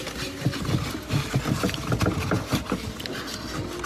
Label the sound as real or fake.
real